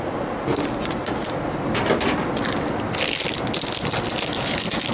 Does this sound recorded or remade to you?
recorded